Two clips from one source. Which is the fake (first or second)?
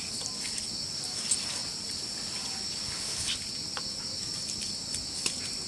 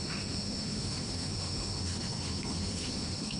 second